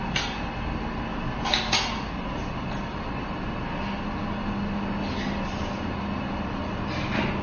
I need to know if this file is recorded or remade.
recorded